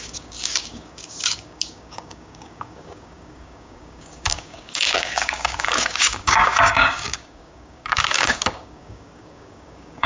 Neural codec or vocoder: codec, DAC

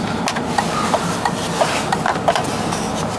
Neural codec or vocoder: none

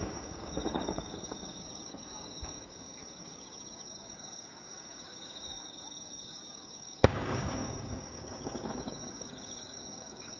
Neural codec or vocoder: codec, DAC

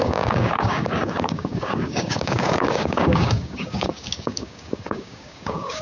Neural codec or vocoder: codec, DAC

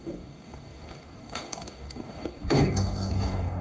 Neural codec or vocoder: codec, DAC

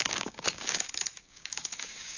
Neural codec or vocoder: codec, DAC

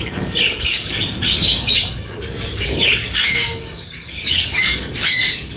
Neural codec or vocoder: codec, DAC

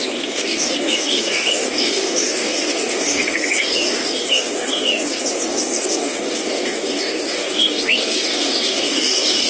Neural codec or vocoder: codec, DAC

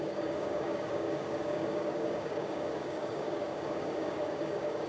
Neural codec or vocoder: codec, DAC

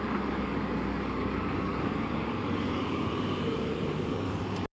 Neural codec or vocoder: codec, DAC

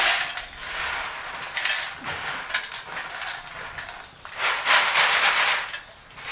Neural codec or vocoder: none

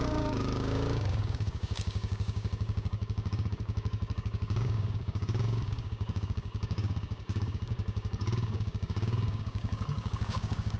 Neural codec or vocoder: codec, DAC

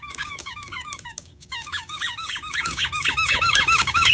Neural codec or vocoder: codec, DAC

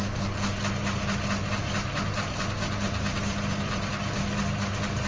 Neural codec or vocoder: none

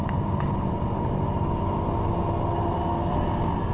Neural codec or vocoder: none